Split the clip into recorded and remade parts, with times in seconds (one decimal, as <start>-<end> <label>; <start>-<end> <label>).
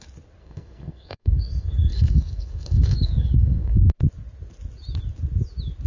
0.0-0.4 recorded; 0.4-3.9 remade; 3.9-5.9 recorded